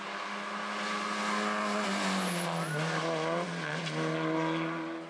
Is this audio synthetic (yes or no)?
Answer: no